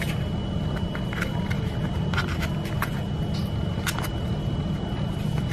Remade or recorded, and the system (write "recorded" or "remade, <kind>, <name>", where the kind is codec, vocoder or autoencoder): recorded